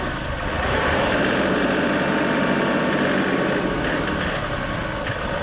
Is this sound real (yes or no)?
yes